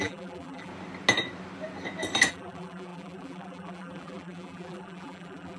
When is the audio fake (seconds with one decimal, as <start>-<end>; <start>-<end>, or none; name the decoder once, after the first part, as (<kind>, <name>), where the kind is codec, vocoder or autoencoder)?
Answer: 0.0-0.7 (vocoder, BigVGAN v2); 2.3-5.6